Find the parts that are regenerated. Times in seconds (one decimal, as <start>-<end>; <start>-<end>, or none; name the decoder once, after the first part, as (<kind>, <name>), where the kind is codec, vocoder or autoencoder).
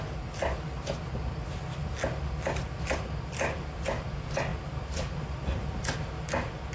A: none